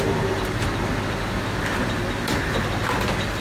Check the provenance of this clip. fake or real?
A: real